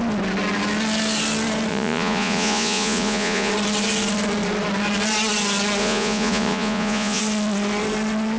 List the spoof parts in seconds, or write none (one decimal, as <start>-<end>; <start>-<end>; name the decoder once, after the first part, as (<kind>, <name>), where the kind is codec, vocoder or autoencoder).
1.7-3.5 (vocoder, Vocos); 5.8-7.2